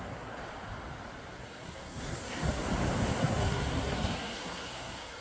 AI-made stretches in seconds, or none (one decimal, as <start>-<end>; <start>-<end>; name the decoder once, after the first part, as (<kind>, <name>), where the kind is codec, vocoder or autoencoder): 0.0-0.4 (codec, SNAC); 1.4-2.6; 3.2-5.2